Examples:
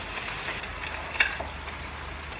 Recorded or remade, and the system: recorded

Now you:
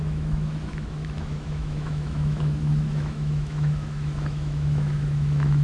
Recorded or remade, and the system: remade, autoencoder, DAC-VAE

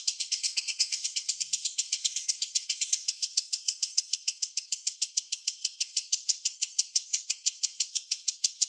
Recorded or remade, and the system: remade, codec, SNAC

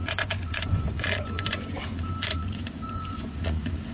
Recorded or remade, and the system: remade, vocoder, Vocos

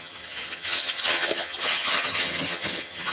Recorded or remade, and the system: remade, vocoder, HiFi-GAN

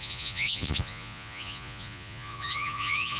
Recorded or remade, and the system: remade, vocoder, Vocos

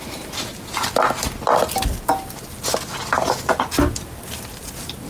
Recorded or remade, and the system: recorded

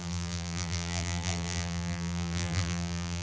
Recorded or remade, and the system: remade, vocoder, BigVGAN v2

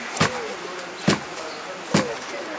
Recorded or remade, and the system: recorded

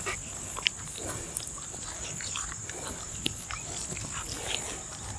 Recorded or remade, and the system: recorded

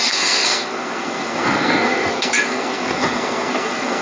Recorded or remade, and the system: remade, codec, SNAC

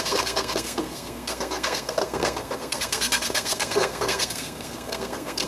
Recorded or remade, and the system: remade, codec, SNAC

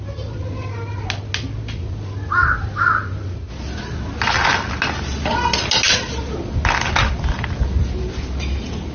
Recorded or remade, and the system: recorded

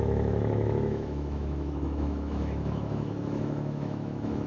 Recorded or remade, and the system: remade, autoencoder, DAC-VAE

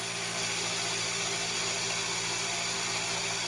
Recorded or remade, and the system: recorded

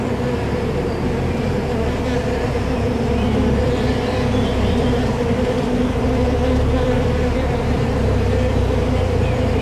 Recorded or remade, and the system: remade, vocoder, BigVGAN v2